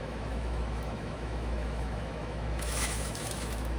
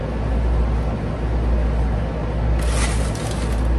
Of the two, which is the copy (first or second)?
first